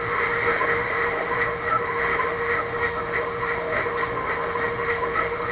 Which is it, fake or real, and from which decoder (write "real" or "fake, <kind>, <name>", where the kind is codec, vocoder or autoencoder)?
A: fake, autoencoder, DAC-VAE